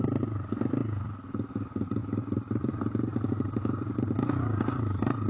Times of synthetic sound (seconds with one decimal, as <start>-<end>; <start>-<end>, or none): 0.0-0.8; 1.5-5.3